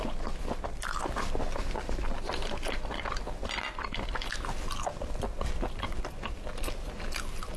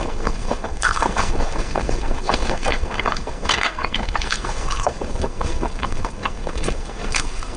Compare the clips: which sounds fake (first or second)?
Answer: second